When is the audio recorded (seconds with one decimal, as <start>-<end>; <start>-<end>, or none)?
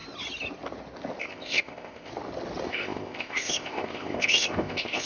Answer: 0.0-1.2; 2.1-2.7